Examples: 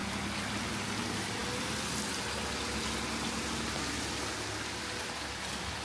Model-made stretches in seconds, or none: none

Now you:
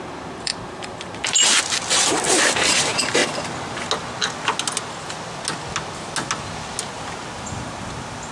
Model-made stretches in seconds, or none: 0.0-3.2 (vocoder, BigVGAN v2)

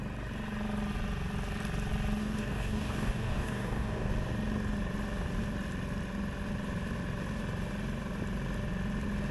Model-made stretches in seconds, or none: 2.2-4.1 (codec, DAC)